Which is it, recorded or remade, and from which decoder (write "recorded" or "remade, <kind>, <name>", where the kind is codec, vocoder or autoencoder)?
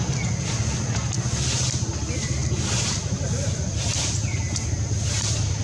recorded